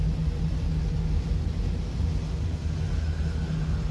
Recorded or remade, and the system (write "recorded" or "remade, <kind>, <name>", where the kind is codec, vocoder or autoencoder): recorded